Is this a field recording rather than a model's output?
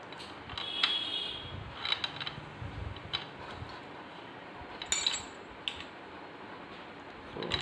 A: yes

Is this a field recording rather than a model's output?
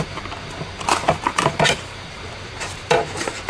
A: no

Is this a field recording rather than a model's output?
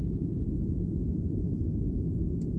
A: no